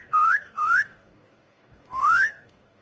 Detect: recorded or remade remade